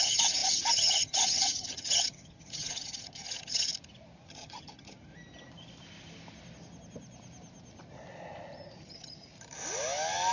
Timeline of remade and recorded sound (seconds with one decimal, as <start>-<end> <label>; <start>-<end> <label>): 0.0-3.7 remade; 3.7-4.3 recorded; 4.3-5.1 remade; 5.1-8.8 recorded; 8.8-9.3 remade; 9.3-10.3 recorded

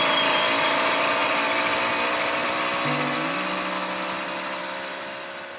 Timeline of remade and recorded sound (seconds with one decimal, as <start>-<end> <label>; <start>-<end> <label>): 0.0-5.6 recorded

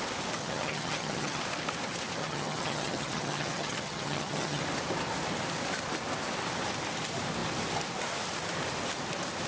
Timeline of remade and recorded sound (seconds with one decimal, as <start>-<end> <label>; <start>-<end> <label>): 0.0-0.4 recorded; 0.4-1.4 remade; 1.4-2.2 recorded; 2.2-4.6 remade; 4.6-9.5 recorded

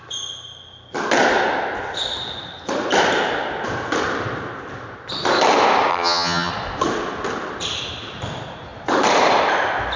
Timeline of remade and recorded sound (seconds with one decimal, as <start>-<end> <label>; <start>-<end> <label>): 0.0-5.9 recorded; 5.9-6.5 remade; 6.5-10.0 recorded

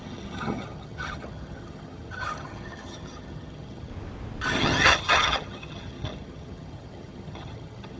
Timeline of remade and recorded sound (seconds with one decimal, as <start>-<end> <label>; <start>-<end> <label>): 0.0-3.9 remade; 3.9-4.6 recorded; 4.6-8.0 remade

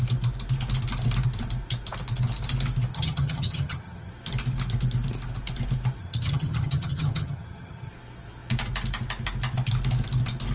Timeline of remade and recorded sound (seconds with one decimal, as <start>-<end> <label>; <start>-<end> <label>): 0.0-2.9 recorded; 2.9-4.1 remade; 4.1-6.0 recorded; 6.0-7.9 remade; 7.9-10.5 recorded